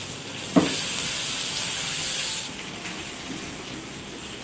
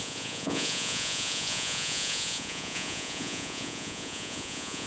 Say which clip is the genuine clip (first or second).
first